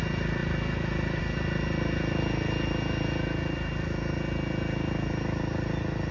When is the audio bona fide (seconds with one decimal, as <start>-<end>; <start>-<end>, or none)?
0.0-6.1